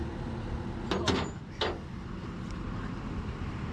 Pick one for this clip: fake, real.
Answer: real